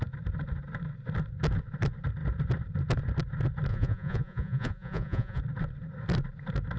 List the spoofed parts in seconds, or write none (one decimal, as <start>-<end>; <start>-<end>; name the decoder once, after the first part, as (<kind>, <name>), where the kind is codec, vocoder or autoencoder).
3.7-5.4 (vocoder, Vocos)